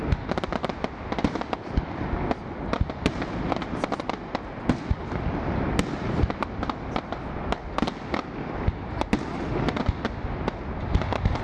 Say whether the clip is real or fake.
real